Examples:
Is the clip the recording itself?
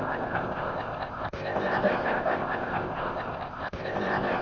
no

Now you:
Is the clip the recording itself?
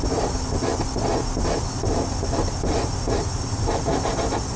yes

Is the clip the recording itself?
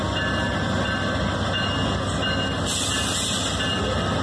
yes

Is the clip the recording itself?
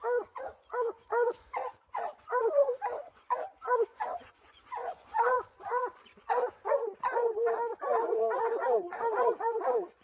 no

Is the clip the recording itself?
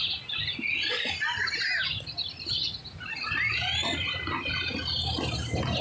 yes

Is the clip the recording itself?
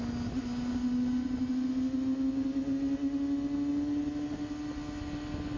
yes